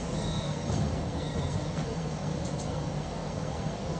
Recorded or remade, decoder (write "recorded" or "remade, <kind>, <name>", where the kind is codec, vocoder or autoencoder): remade, codec, SNAC